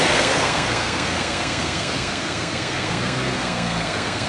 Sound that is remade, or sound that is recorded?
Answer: remade